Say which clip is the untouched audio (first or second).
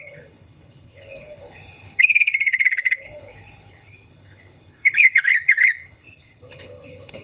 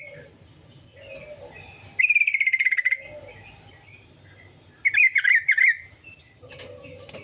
second